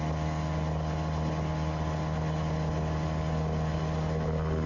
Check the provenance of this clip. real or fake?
real